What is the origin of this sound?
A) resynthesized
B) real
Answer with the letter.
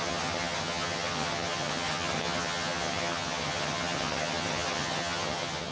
A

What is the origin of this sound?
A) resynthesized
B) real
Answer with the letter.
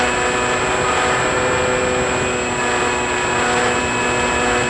B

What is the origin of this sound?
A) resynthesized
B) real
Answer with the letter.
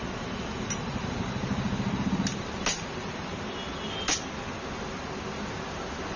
B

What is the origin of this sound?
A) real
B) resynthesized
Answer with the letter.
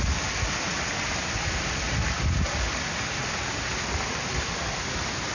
A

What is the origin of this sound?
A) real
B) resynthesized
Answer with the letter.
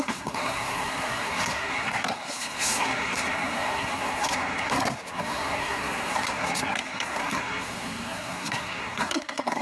B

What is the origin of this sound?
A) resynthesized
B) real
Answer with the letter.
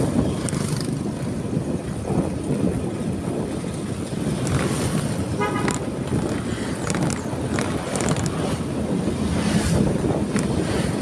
B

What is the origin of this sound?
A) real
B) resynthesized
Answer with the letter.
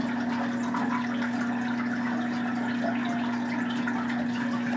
A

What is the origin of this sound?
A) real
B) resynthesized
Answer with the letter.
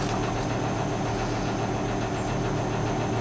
A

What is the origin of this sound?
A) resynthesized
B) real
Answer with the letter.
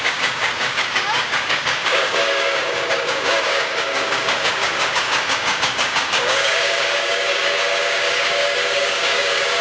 A